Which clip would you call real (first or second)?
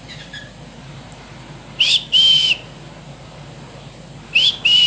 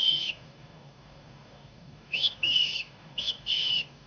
first